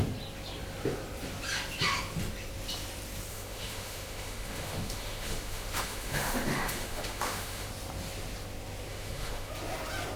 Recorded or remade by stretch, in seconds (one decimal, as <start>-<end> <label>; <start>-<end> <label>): 0.0-3.3 recorded; 3.3-7.7 remade; 7.7-8.9 recorded; 8.9-9.5 remade; 9.5-10.2 recorded